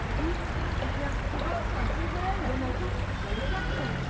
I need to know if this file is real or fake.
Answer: real